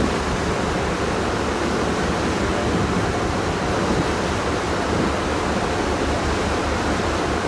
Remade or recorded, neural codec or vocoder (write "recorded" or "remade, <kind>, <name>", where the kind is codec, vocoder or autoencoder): recorded